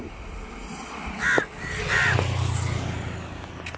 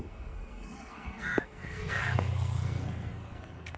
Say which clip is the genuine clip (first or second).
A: first